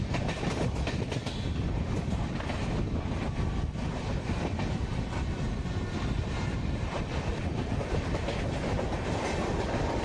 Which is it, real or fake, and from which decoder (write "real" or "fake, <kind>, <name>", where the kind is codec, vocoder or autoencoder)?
real